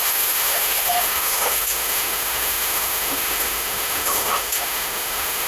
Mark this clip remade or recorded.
remade